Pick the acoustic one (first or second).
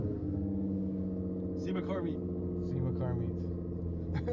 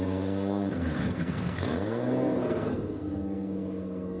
first